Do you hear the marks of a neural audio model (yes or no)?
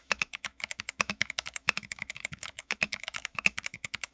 yes